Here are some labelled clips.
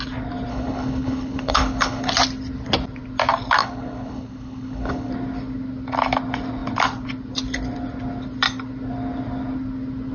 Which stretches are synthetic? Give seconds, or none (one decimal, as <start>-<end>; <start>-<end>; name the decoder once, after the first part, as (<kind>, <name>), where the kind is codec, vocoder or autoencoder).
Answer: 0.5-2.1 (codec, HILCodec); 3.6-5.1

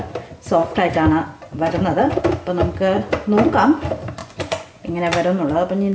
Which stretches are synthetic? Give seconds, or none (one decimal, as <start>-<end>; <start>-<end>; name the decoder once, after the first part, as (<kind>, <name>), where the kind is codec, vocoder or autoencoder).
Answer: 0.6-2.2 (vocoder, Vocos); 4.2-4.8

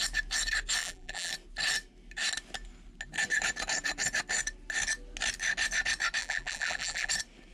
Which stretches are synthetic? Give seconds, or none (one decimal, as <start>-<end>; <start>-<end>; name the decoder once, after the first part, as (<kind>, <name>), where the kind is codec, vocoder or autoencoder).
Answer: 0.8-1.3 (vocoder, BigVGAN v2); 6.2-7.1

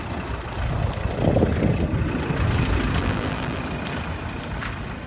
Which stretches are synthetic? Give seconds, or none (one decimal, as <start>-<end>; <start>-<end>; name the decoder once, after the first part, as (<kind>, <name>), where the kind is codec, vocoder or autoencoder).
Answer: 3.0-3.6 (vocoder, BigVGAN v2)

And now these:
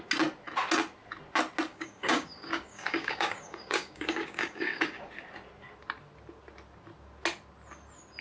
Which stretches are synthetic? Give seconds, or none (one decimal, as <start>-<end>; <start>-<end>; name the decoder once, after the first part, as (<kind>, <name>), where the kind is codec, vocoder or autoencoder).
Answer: 1.7-5.1 (codec, DAC)

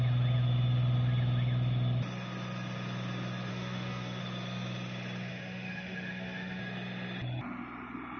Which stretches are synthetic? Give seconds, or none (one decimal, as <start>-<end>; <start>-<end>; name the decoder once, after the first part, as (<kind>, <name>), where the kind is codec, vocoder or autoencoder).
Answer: 3.5-4.2 (autoencoder, DAC-VAE); 5.3-6.6

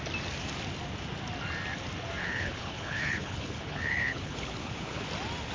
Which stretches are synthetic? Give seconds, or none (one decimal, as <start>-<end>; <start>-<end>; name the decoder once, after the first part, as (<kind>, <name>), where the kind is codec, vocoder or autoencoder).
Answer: 2.2-5.0 (codec, HILCodec)